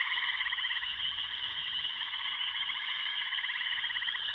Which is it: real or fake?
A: fake